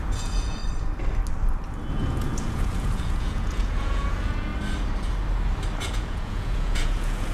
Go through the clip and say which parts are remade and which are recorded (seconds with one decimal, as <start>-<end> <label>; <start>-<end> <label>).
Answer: 0.0-0.6 remade; 0.6-1.9 recorded; 1.9-4.5 remade; 4.5-5.8 recorded; 5.8-7.3 remade